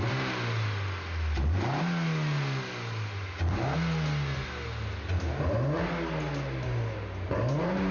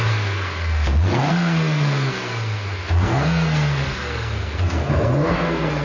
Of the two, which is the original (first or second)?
first